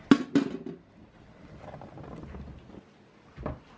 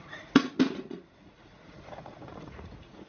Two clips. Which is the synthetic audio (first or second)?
second